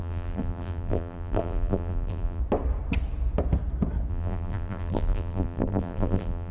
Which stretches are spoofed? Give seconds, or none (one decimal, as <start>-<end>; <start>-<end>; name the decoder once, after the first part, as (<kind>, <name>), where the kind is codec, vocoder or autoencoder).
0.0-2.4 (vocoder, BigVGAN v2); 4.1-6.5